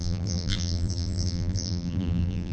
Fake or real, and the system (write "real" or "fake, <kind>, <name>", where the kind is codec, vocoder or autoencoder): fake, vocoder, BigVGAN v2